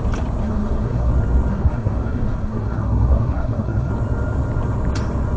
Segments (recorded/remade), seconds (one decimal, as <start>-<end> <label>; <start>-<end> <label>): 0.0-0.4 recorded; 0.4-1.1 remade; 1.1-1.5 recorded; 1.5-3.9 remade; 3.9-5.4 recorded